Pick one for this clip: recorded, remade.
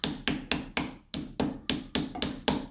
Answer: recorded